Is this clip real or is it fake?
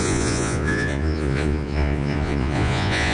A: fake